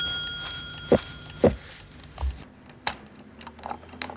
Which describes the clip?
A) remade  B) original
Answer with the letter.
B